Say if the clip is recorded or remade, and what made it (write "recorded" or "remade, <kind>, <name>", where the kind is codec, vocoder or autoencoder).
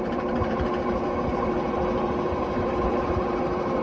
recorded